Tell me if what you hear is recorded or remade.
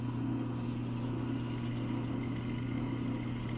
recorded